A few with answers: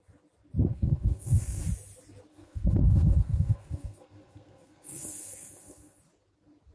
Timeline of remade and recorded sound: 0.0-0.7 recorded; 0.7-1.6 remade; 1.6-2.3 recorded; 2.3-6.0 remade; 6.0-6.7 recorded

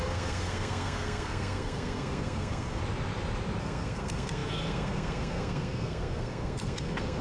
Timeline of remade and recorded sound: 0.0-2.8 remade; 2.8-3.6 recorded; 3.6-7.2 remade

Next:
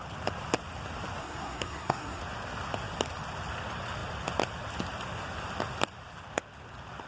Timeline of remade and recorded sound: 0.0-1.2 recorded; 1.2-2.2 remade; 2.2-7.1 recorded

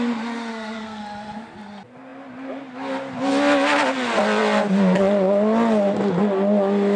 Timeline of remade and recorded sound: 0.0-0.5 recorded; 0.5-1.0 remade; 1.0-7.0 recorded